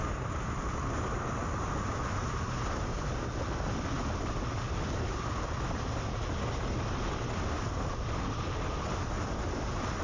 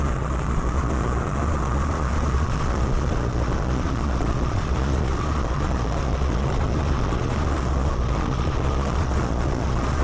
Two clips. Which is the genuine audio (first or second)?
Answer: first